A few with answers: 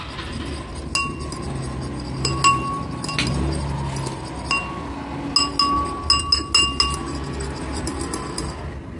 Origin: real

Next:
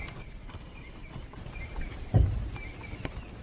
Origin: fake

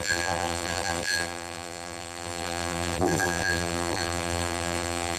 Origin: fake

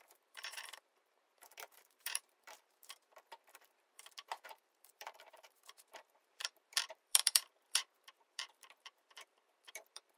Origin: fake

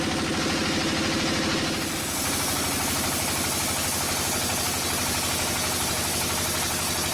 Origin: real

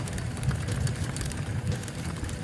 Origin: fake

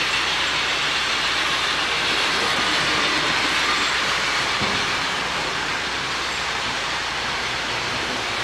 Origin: fake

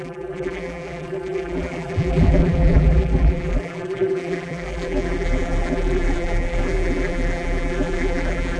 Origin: fake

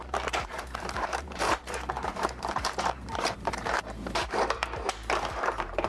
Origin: fake